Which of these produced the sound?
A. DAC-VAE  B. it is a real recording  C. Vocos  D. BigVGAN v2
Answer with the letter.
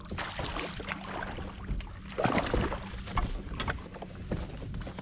B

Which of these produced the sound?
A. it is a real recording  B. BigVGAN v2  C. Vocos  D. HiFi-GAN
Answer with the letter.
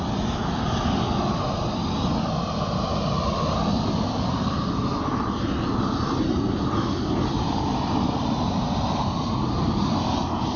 A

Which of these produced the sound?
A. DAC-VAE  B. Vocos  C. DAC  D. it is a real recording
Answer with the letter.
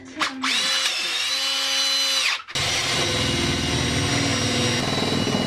D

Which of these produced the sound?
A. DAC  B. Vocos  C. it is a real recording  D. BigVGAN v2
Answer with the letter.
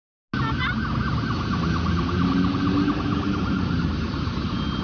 C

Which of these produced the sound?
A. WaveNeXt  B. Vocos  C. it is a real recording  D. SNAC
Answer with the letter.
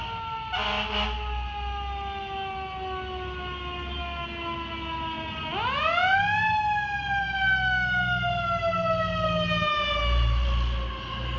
C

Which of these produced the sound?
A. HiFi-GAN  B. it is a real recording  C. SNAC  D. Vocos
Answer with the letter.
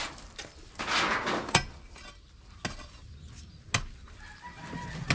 B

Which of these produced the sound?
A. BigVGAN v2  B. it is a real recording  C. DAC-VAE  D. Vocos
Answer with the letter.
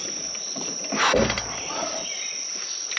B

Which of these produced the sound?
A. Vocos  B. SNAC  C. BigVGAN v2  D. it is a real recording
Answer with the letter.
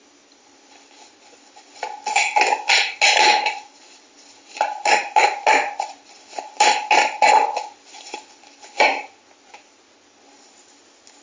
D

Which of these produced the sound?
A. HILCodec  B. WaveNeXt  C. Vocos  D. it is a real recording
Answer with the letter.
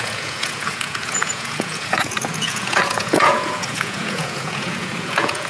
C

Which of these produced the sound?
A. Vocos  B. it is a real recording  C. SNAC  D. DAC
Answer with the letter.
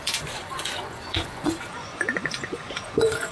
A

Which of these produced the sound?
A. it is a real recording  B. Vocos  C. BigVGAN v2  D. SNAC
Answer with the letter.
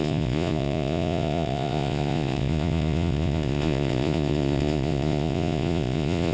B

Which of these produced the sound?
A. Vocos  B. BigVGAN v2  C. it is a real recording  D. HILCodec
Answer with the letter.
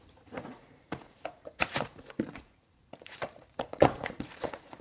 A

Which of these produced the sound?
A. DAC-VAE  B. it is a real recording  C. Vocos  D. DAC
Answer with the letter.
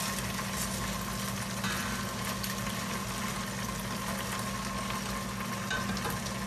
B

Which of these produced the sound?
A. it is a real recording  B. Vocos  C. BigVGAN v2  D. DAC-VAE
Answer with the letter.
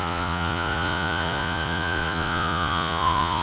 B